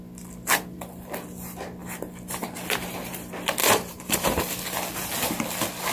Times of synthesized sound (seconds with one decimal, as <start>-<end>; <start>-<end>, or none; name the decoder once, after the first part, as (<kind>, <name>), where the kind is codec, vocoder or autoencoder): 3.6-4.4 (vocoder, BigVGAN v2)